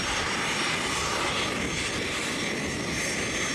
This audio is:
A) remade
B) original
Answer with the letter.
B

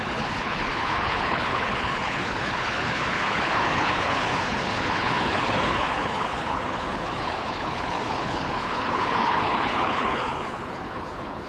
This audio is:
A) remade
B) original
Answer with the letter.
A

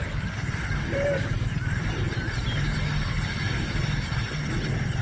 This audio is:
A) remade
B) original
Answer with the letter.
B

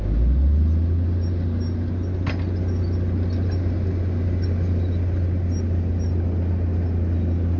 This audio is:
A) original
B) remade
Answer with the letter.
A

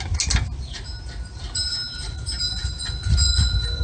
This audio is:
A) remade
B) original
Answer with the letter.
B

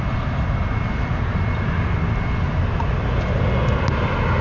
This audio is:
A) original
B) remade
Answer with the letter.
A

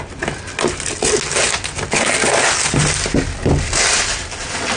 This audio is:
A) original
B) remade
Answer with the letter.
A